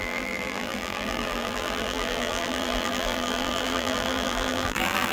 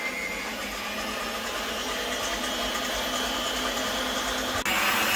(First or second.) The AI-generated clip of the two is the first